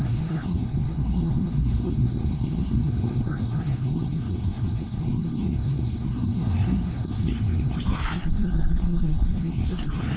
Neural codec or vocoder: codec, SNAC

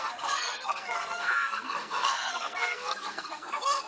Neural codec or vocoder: codec, SNAC